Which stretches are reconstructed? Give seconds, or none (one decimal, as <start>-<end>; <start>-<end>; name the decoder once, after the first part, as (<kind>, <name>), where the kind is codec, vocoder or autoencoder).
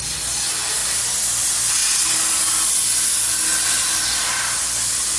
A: none